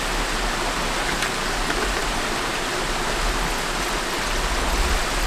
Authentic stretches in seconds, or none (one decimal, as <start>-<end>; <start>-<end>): 0.0-5.3